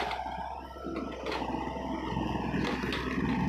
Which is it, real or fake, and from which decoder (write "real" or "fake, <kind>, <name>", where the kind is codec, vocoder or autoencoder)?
real